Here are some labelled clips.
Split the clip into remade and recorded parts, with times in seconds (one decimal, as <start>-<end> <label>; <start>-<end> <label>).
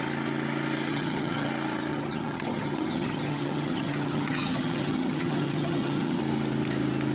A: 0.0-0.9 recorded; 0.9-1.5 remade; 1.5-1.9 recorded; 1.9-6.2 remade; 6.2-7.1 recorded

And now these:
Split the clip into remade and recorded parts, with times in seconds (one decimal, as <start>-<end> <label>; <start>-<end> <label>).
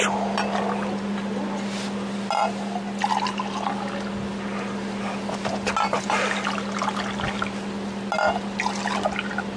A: 0.0-9.6 recorded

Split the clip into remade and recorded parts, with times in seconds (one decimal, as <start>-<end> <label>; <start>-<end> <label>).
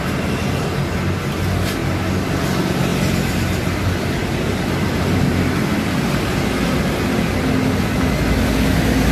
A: 0.0-9.1 recorded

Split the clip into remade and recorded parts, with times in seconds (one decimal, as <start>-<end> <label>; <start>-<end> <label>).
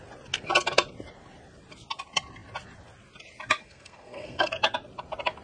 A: 0.0-3.6 recorded; 3.6-4.5 remade; 4.5-5.4 recorded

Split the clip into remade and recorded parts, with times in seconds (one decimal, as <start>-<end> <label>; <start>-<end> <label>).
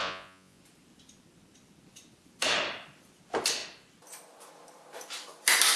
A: 0.0-0.6 remade; 0.6-5.8 recorded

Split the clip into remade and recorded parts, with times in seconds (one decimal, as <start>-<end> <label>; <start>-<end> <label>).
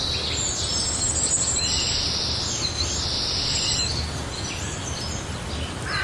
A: 0.0-6.0 recorded